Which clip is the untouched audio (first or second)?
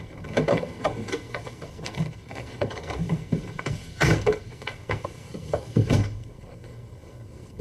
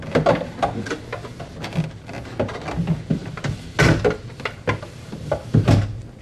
second